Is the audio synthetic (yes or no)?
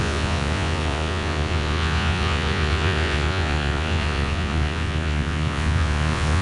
yes